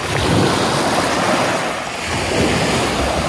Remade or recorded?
recorded